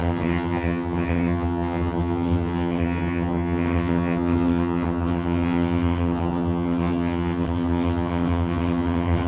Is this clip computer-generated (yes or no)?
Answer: yes